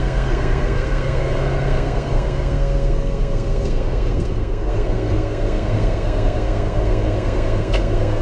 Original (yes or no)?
no